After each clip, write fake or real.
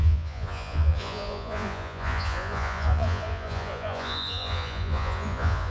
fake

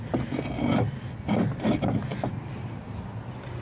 real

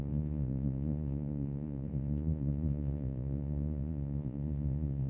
fake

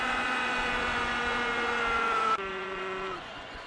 fake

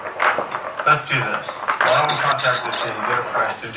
real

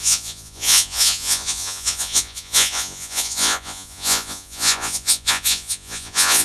fake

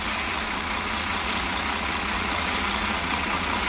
fake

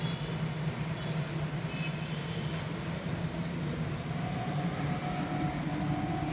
real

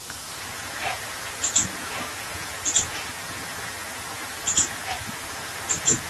fake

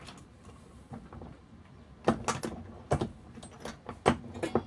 real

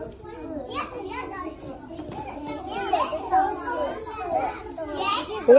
real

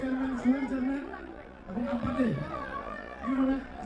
fake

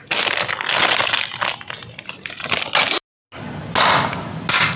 real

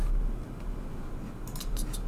real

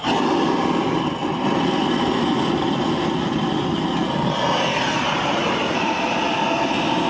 real